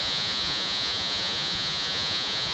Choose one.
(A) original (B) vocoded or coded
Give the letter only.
B